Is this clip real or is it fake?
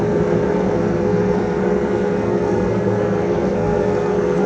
fake